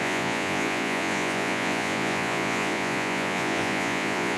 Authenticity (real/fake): fake